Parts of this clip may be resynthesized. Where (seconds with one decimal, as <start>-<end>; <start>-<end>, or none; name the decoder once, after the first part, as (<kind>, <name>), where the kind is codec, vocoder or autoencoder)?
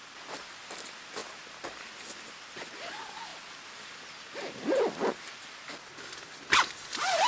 none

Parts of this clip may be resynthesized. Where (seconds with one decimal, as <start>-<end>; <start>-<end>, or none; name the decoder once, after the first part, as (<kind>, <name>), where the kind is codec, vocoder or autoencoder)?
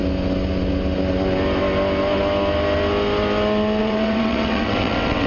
3.8-5.3 (vocoder, WaveNeXt)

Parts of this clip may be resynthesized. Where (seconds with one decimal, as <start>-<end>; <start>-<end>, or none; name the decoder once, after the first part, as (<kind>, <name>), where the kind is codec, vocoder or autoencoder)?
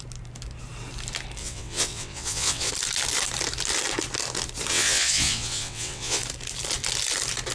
1.4-2.7 (vocoder, WaveNeXt); 4.7-6.2